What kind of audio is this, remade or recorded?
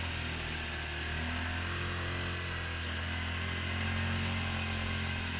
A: recorded